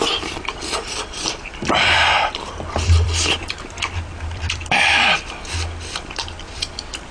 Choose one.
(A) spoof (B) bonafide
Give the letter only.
A